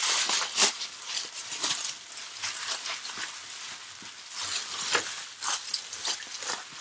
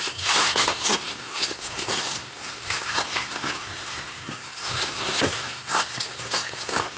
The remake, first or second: second